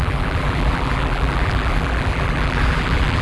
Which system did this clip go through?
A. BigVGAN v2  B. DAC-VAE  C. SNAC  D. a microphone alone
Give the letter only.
A